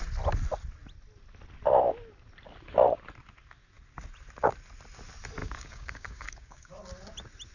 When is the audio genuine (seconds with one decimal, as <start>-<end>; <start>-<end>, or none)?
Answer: 0.0-5.4; 6.7-7.5